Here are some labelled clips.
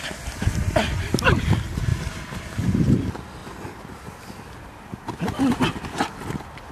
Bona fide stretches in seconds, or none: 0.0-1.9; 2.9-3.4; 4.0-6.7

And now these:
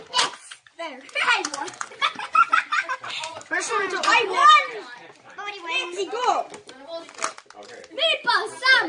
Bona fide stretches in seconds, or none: 2.7-3.5; 4.4-8.9

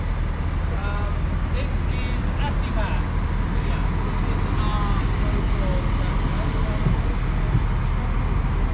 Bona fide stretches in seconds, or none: 0.0-8.7

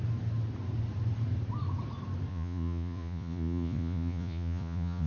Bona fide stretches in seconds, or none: 0.0-2.3

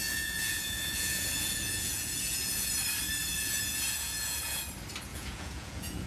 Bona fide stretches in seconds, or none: 2.7-3.3; 4.6-5.1

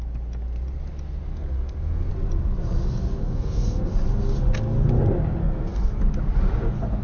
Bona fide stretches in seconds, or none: 0.0-1.3; 2.1-3.2; 3.9-5.4; 6.0-7.0

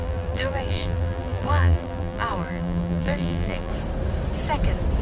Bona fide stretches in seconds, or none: 3.7-5.0